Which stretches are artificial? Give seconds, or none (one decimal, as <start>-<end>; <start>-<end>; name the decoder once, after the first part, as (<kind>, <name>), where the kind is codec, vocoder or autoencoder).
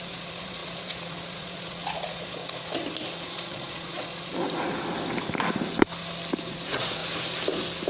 0.0-2.4 (vocoder, Vocos); 3.2-4.4; 6.5-7.0